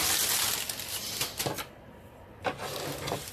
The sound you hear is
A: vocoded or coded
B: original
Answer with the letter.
B